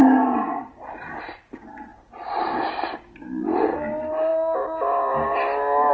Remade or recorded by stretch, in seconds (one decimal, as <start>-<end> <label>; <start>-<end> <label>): 0.0-5.9 recorded